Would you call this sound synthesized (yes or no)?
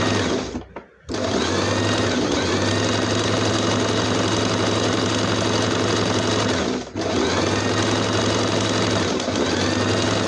no